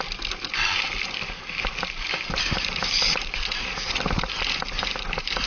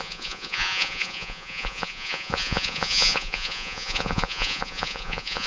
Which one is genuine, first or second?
first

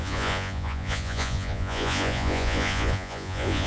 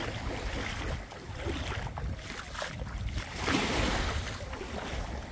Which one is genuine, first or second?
second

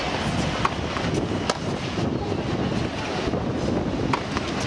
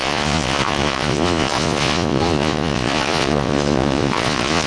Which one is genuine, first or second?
first